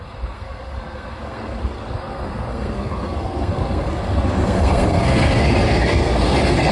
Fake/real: fake